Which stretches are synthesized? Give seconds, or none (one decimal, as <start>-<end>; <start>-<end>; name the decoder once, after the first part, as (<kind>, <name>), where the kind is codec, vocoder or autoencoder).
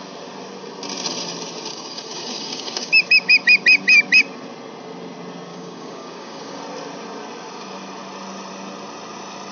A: 1.7-2.9 (codec, DAC); 5.5-6.6